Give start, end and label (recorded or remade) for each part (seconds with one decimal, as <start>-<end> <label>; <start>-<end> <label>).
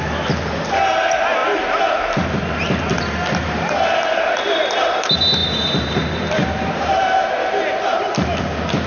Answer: 0.0-5.4 recorded; 5.4-8.4 remade; 8.4-8.9 recorded